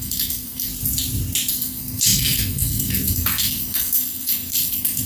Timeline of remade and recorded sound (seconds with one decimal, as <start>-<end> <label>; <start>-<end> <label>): 0.0-0.7 remade; 0.7-1.5 recorded; 1.5-5.1 remade